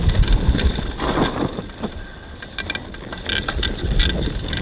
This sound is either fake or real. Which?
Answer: real